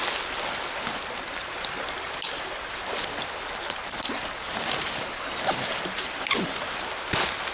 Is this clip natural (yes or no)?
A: yes